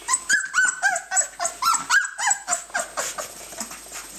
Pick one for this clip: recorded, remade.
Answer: recorded